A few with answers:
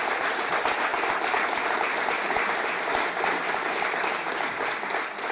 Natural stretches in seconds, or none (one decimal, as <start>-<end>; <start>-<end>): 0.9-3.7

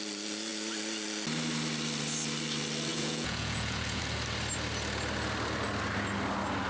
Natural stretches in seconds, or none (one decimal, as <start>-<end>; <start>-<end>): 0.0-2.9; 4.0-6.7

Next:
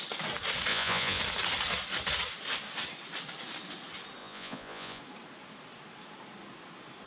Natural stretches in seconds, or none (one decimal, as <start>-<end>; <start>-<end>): 0.0-0.7; 1.2-4.2; 5.0-7.1